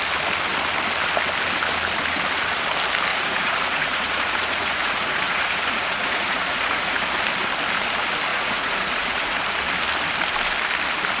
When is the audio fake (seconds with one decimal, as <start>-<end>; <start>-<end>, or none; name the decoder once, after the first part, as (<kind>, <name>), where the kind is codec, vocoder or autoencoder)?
3.1-7.0 (vocoder, Vocos); 8.3-9.4